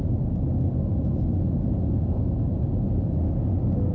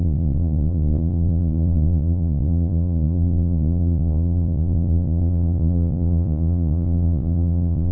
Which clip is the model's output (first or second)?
second